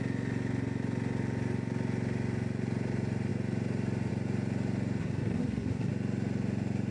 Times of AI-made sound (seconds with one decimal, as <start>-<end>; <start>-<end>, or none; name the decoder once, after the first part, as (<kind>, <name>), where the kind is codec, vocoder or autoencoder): 5.0-5.9 (codec, SNAC)